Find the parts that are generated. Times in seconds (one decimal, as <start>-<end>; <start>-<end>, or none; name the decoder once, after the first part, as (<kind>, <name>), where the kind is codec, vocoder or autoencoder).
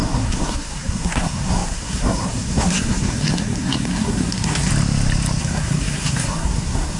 0.0-4.7 (codec, SNAC); 5.4-7.0